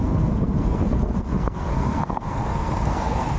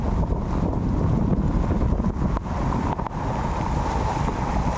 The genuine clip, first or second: second